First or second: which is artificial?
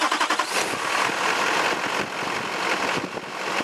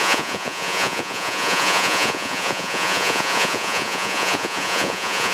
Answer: second